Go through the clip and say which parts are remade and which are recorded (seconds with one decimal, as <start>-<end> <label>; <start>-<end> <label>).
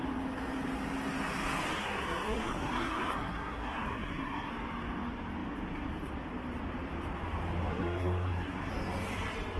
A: 0.0-1.8 recorded; 1.8-4.5 remade; 4.5-7.7 recorded; 7.7-8.7 remade; 8.7-9.6 recorded